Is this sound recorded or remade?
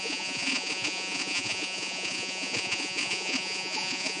remade